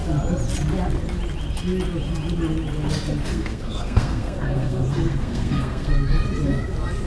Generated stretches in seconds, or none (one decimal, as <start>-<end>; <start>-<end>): 3.2-5.9